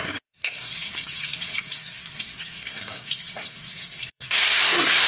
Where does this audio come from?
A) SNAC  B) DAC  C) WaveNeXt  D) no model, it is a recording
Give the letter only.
A